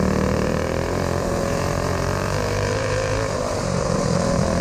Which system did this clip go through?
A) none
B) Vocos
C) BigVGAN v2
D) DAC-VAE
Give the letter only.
C